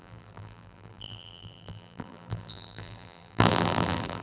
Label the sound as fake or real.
fake